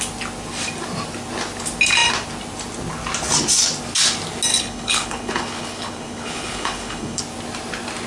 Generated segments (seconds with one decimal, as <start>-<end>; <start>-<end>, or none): 4.5-7.2